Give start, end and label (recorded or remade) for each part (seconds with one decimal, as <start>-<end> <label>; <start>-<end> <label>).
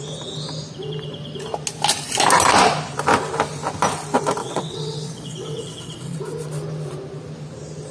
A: 0.0-4.4 recorded; 4.4-6.2 remade; 6.2-7.9 recorded